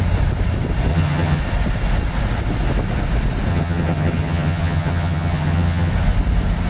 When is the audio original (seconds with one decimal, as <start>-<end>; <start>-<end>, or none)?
0.0-0.9; 1.4-3.5; 5.9-6.7